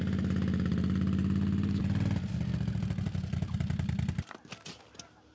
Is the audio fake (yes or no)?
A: no